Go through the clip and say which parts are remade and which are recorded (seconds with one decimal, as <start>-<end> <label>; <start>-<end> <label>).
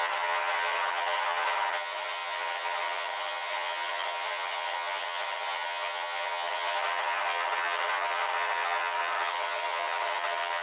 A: 0.0-10.6 remade